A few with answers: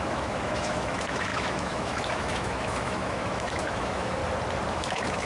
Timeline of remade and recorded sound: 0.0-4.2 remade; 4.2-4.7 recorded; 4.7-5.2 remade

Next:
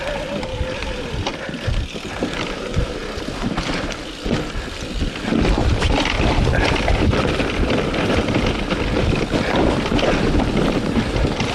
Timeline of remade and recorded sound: 0.0-5.6 recorded; 5.6-8.5 remade; 8.5-11.5 recorded

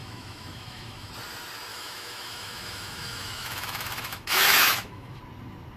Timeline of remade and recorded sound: 0.0-1.1 remade; 1.1-1.7 recorded; 1.7-5.2 remade; 5.2-5.8 recorded

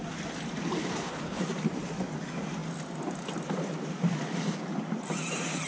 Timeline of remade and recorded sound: 0.0-0.9 recorded; 0.9-1.4 remade; 1.4-5.7 recorded